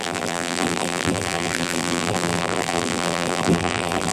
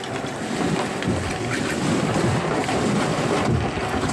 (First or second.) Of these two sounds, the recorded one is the second